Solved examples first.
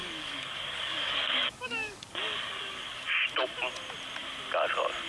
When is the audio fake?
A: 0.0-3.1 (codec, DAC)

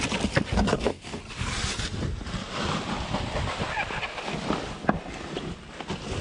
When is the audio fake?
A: 0.7-1.2 (codec, DAC)

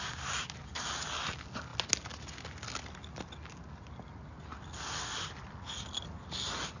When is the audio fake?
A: none

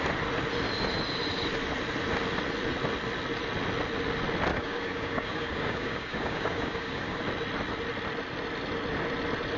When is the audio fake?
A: 4.5-7.2 (codec, DAC)

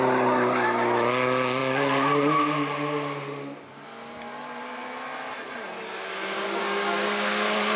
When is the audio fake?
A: 5.8-7.8 (codec, DAC)

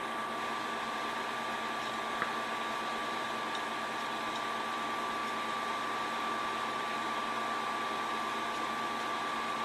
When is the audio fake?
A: none

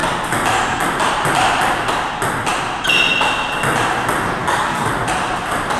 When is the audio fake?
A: 4.4-4.9 (codec, DAC)

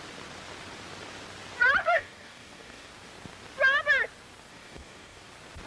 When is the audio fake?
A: 1.8-2.9 (codec, DAC); 4.5-5.3